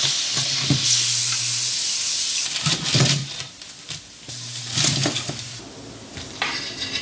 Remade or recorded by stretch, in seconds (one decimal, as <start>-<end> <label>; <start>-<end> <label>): 0.0-1.2 remade; 1.2-2.2 recorded; 2.2-3.2 remade; 3.2-4.1 recorded; 4.1-7.0 remade